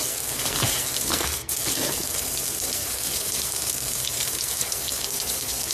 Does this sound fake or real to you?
fake